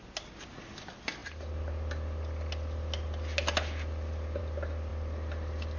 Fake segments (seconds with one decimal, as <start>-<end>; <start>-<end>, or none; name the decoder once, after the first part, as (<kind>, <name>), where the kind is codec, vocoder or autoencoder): none